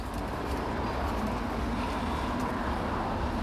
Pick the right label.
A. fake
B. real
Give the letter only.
B